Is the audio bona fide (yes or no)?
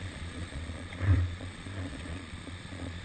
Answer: no